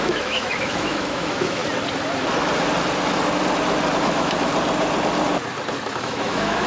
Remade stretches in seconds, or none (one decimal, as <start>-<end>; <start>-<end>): 0.0-1.6; 4.0-4.5; 6.0-6.7